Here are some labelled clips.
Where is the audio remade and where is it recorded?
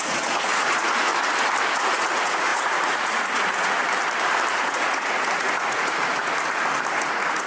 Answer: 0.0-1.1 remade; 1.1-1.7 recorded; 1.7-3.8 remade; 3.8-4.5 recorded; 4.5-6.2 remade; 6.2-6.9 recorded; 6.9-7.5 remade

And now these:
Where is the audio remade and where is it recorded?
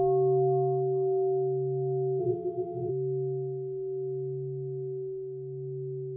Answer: 0.0-2.2 recorded; 2.2-2.9 remade; 2.9-6.2 recorded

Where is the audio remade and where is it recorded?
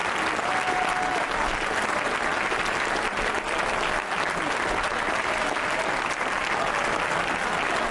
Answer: 0.0-7.9 recorded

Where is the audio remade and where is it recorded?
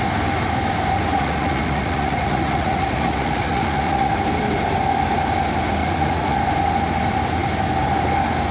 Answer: 0.0-1.1 recorded; 1.1-4.1 remade; 4.1-5.8 recorded; 5.8-6.4 remade; 6.4-8.5 recorded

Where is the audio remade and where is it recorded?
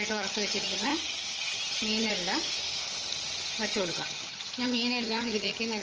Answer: 0.0-0.9 remade; 0.9-1.4 recorded; 1.4-2.1 remade; 2.1-3.5 recorded; 3.5-5.8 remade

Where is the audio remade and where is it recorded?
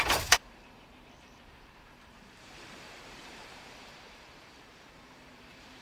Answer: 0.0-5.8 remade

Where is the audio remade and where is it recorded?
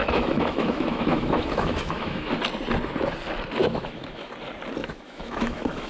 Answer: 0.0-2.3 remade; 2.3-3.6 recorded; 3.6-4.3 remade; 4.3-4.8 recorded; 4.8-5.9 remade